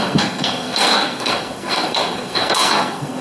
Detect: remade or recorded remade